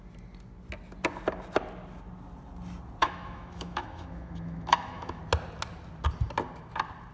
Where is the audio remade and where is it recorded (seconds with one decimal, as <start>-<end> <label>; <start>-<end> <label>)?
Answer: 0.0-3.0 recorded; 3.0-5.2 remade; 5.2-7.1 recorded